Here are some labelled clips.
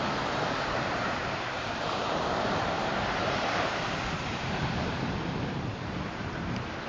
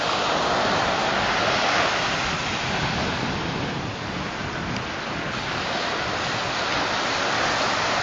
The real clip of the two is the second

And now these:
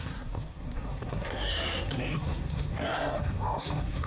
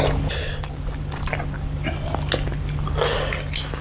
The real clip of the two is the second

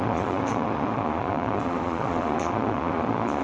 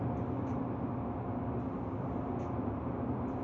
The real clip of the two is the second